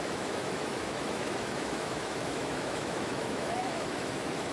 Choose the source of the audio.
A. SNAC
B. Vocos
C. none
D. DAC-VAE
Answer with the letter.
D